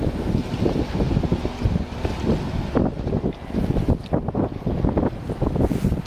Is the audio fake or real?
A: real